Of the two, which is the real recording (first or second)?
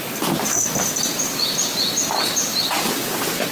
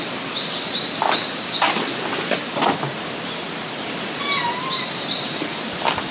first